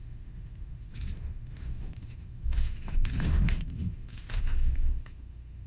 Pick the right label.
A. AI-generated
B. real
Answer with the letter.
A